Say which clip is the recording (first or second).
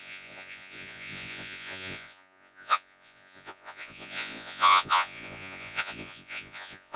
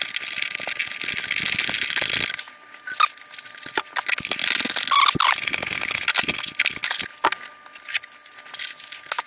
second